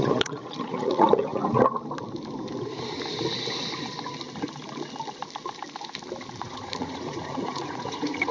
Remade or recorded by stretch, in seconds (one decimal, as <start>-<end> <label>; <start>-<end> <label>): 0.0-1.4 remade; 1.4-6.4 recorded; 6.4-8.3 remade